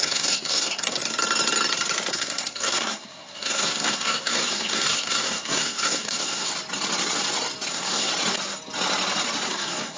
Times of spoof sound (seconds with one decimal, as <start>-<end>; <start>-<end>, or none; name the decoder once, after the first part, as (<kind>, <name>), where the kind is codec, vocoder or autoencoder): 0.0-1.0 (codec, SNAC); 2.1-6.5; 7.7-8.1; 9.5-10.0